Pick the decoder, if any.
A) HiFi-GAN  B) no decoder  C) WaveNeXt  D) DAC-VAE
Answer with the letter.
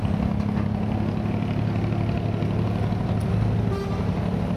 B